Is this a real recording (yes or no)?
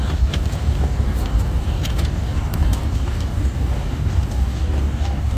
no